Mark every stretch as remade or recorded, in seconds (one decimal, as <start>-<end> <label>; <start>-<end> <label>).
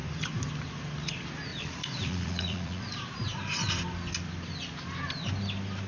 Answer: 0.0-1.5 recorded; 1.5-2.8 remade; 2.8-5.9 recorded